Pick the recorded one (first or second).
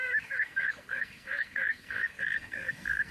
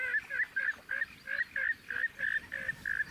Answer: second